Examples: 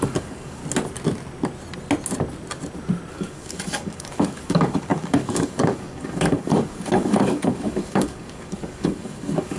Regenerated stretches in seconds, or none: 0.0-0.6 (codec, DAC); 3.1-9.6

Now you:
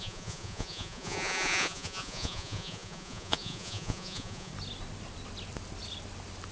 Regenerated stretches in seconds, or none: 0.0-4.5 (vocoder, Vocos)

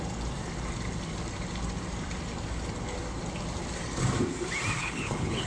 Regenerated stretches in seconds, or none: 4.8-5.5 (codec, HILCodec)

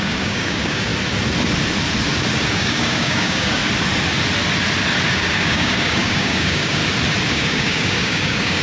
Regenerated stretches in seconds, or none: 0.0-0.9 (codec, DAC); 2.5-3.6; 5.1-6.8; 7.3-8.6

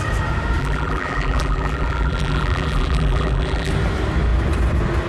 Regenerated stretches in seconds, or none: 0.6-3.7 (vocoder, BigVGAN v2)